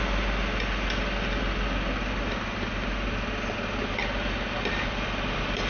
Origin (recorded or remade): recorded